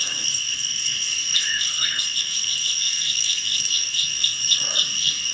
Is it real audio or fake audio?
fake